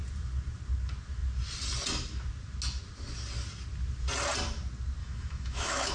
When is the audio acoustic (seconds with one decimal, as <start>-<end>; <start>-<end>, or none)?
0.0-5.0